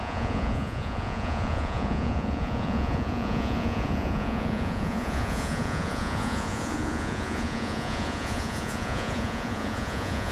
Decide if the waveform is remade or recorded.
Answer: remade